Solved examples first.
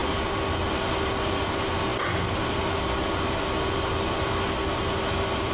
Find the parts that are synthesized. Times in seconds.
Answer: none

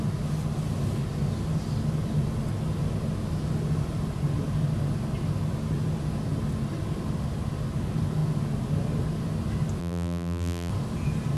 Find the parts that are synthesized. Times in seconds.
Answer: 9.8-10.7 (vocoder, BigVGAN v2)

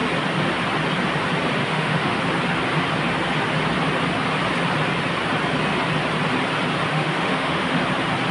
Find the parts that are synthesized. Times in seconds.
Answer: 1.6-2.2 (autoencoder, DAC-VAE); 6.9-7.8

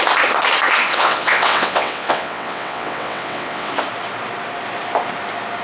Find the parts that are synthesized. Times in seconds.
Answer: 0.9-3.7 (vocoder, WaveNeXt)

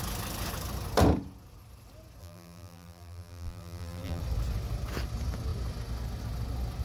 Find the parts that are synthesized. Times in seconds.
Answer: 2.2-4.2 (vocoder, BigVGAN v2)